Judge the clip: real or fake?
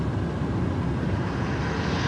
real